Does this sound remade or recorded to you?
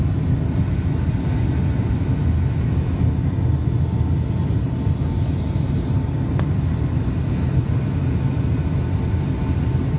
recorded